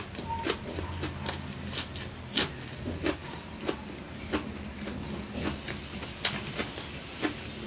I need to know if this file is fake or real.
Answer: real